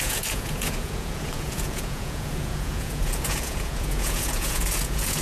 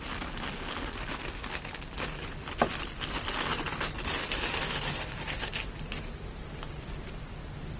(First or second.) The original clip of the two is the second